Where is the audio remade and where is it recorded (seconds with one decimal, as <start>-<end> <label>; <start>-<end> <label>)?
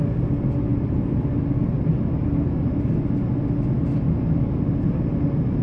0.0-0.7 recorded; 0.7-1.9 remade; 1.9-5.6 recorded